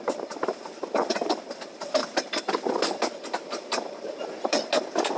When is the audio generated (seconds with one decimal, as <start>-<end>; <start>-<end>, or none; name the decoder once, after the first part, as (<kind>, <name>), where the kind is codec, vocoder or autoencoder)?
none